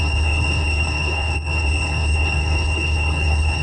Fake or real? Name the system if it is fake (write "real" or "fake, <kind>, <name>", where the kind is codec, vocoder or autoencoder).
fake, codec, HILCodec